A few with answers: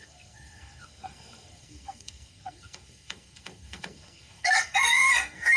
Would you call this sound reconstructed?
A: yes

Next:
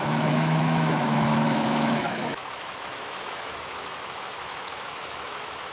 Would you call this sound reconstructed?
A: yes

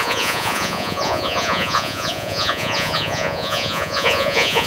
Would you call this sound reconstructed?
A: yes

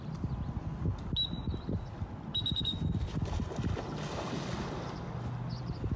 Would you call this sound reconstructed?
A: no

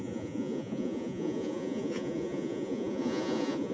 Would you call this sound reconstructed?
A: yes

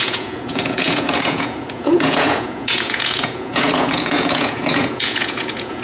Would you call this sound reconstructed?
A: yes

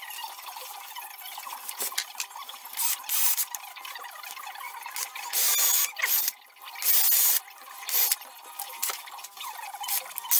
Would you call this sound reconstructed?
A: no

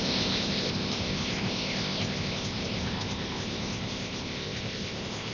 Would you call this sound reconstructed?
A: yes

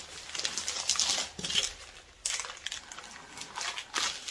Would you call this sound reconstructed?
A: no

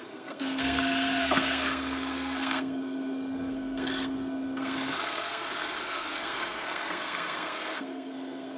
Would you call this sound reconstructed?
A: yes